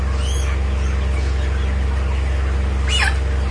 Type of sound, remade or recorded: recorded